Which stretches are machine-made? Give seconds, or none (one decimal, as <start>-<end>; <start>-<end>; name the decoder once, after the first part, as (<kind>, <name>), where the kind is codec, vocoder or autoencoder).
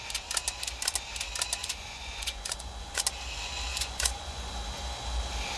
1.6-3.0 (vocoder, Vocos); 3.7-4.5